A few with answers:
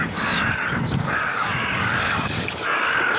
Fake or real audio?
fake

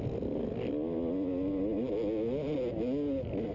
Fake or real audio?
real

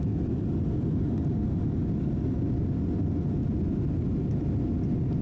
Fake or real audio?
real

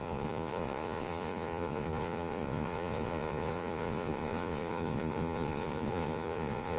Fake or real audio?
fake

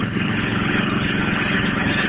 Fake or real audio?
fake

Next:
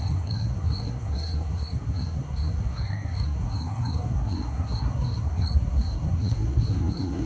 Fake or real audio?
fake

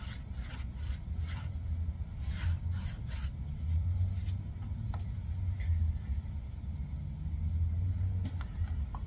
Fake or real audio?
real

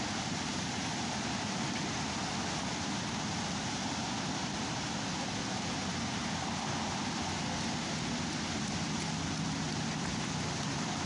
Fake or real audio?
real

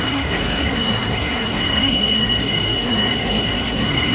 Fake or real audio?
fake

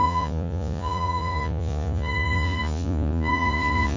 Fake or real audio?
fake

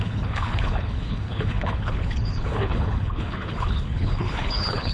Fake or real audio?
fake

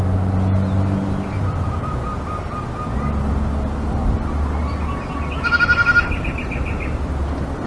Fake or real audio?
real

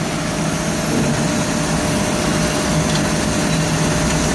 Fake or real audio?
real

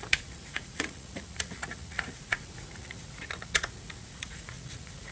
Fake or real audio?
fake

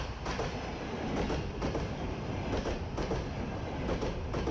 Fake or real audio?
real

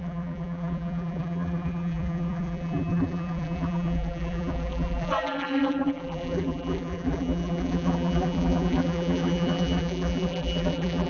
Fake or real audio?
fake